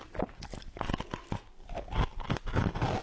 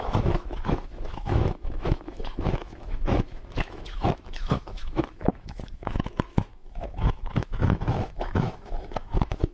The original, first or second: first